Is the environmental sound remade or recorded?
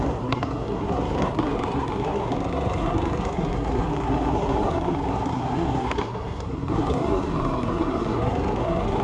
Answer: remade